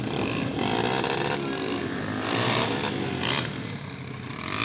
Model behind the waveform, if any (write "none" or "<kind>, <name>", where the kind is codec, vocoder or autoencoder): none